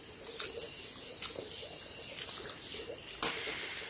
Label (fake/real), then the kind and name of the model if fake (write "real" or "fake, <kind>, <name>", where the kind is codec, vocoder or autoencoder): real